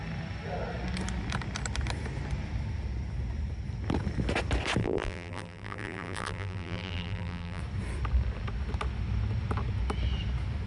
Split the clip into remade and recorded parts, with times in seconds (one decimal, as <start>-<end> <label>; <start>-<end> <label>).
0.0-4.8 recorded; 4.8-7.6 remade; 7.6-10.7 recorded

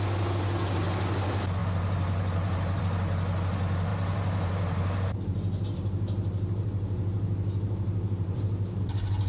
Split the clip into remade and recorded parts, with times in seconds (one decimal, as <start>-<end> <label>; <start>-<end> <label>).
0.0-1.6 recorded; 1.6-2.8 remade; 2.8-3.9 recorded; 3.9-8.8 remade; 8.8-9.3 recorded

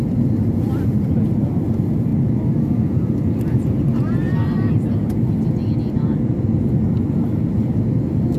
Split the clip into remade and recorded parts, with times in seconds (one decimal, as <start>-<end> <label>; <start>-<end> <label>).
0.0-8.4 recorded